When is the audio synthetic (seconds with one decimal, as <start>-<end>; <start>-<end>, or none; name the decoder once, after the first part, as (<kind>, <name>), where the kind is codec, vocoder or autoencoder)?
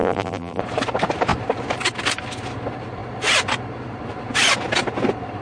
0.0-0.6 (vocoder, BigVGAN v2)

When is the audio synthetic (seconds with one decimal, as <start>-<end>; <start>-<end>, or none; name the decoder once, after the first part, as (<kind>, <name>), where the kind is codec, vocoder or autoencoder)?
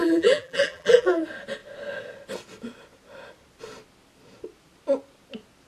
0.0-1.2 (vocoder, BigVGAN v2)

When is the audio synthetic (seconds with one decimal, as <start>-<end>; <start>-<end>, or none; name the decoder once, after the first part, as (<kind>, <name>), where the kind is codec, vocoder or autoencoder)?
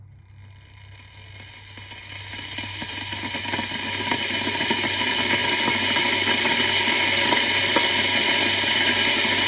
none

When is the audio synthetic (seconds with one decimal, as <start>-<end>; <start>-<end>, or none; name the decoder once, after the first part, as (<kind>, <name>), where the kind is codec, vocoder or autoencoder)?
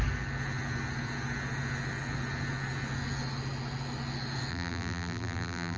4.5-5.8 (vocoder, BigVGAN v2)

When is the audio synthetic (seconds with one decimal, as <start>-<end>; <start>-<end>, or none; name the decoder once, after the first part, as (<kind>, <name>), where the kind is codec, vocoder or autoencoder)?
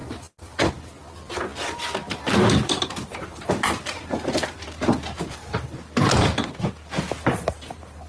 0.0-0.7 (vocoder, BigVGAN v2)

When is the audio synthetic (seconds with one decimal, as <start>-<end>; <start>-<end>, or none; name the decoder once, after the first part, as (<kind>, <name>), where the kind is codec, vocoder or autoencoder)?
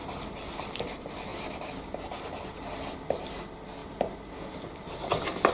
3.8-4.5 (vocoder, BigVGAN v2)